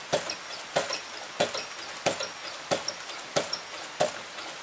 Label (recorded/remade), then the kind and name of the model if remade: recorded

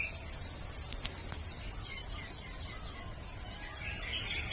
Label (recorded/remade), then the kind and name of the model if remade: recorded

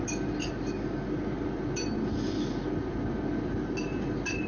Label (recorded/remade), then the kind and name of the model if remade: recorded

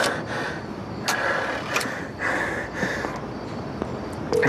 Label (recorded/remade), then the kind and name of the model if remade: recorded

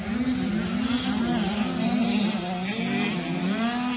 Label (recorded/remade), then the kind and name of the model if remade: recorded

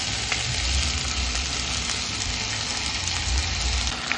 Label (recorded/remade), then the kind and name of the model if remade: recorded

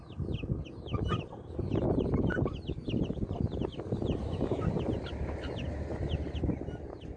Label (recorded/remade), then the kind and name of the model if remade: recorded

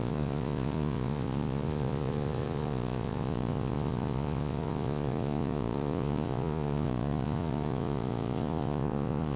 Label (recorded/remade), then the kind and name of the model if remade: remade, vocoder, Vocos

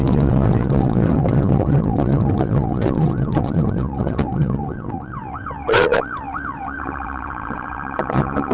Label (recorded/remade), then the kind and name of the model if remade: remade, vocoder, WaveNeXt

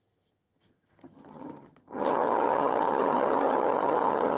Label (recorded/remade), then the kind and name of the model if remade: remade, vocoder, HiFi-GAN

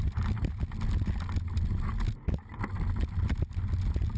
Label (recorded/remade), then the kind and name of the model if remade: recorded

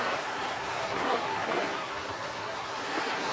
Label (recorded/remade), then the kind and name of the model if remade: remade, codec, SNAC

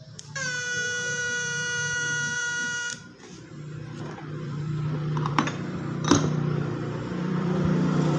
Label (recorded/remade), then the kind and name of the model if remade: remade, vocoder, BigVGAN v2